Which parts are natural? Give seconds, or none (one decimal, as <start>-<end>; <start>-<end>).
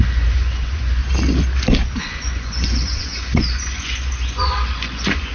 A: 1.0-2.0